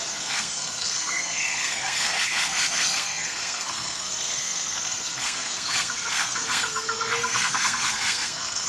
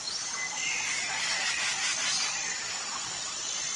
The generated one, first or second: first